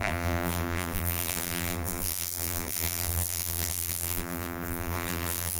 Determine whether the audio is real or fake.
fake